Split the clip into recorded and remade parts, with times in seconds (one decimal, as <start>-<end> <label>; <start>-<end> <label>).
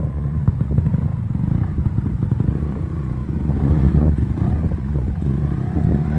0.0-1.1 remade; 1.1-2.3 recorded; 2.3-6.2 remade